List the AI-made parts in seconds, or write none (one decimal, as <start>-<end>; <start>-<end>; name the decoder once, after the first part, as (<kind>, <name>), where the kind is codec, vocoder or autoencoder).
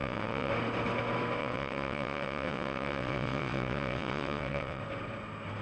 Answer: 0.0-0.5 (vocoder, WaveNeXt); 1.4-4.8